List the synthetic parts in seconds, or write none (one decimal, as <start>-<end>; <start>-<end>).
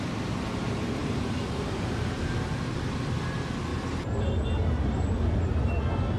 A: 1.0-3.1